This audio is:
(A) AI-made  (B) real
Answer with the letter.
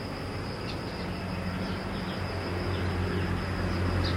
B